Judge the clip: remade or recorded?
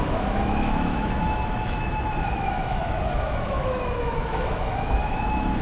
remade